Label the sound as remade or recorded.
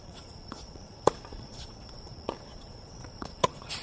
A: remade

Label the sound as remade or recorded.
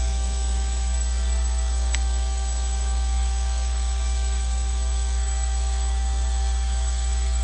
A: remade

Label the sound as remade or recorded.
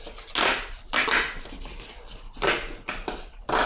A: recorded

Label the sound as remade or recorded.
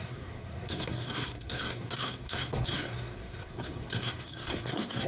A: remade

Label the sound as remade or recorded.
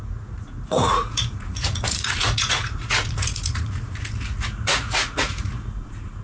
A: remade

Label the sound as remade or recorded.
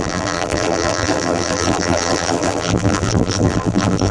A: remade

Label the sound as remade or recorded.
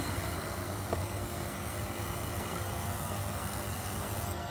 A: remade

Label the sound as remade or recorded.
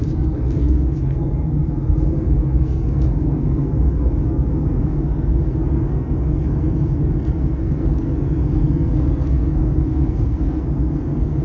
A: remade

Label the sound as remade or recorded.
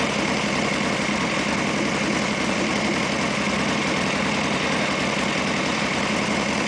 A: recorded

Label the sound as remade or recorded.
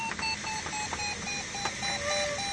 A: recorded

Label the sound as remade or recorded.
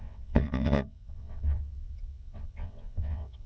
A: remade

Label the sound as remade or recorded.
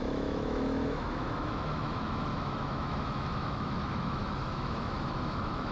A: remade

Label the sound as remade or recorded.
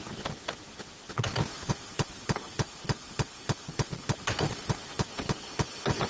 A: recorded